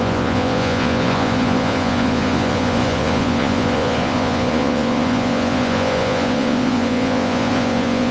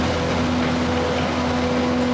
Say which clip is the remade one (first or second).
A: first